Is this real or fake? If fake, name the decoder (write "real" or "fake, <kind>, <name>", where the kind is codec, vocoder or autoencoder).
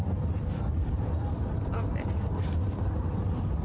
fake, vocoder, BigVGAN v2